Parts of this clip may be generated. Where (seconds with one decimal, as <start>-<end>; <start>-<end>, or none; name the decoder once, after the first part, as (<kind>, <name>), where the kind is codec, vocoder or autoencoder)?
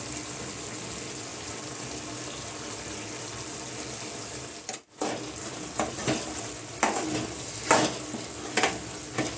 none